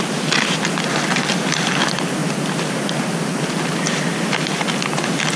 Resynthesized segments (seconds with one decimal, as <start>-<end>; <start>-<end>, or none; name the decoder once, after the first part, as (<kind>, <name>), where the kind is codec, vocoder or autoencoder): none